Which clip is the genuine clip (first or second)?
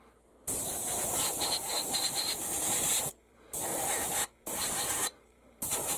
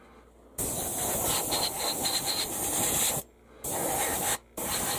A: second